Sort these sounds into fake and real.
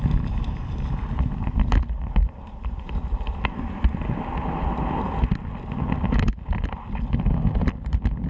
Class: real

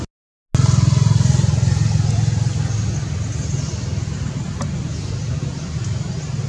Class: real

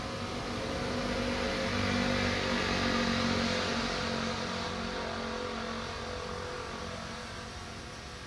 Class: real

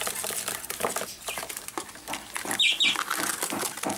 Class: real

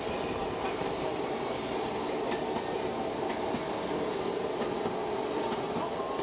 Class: real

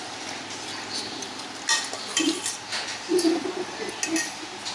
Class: real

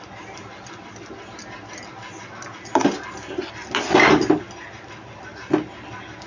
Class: real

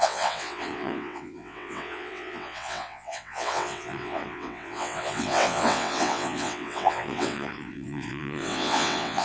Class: fake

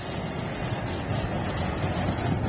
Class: real